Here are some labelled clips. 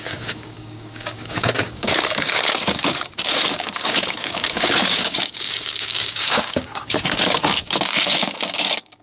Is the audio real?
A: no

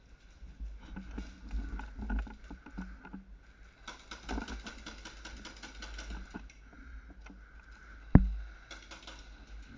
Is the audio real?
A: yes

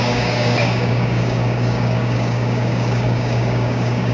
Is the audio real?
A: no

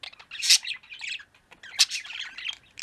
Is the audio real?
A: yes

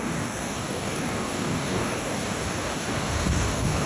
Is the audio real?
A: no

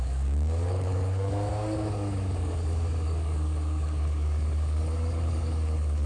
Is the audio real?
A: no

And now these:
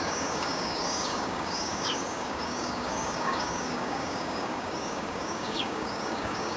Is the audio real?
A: no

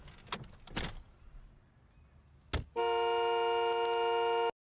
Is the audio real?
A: yes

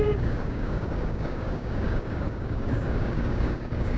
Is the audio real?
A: no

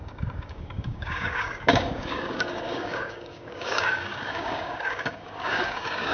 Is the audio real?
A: no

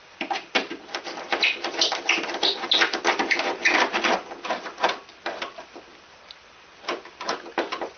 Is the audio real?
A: yes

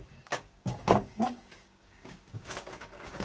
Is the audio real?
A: no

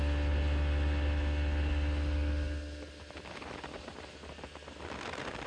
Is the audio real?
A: yes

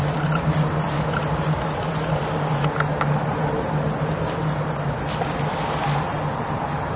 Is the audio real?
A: yes